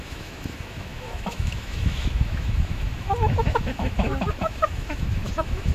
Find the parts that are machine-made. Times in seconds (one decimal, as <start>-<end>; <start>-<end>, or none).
0.0-5.7